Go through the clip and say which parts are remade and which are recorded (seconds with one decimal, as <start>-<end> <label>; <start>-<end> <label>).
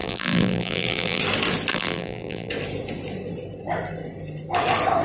0.0-1.2 remade; 1.2-1.7 recorded; 1.7-2.5 remade; 2.5-5.0 recorded